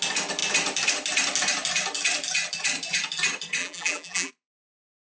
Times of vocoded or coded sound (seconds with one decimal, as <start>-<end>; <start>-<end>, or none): 3.6-4.3